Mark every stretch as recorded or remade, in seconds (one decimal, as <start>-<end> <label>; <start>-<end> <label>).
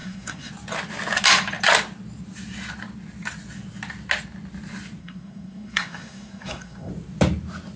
0.0-0.5 remade; 0.5-5.0 recorded; 5.0-6.9 remade; 6.9-7.8 recorded